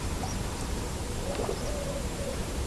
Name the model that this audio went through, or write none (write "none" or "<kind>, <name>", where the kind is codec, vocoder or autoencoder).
vocoder, BigVGAN v2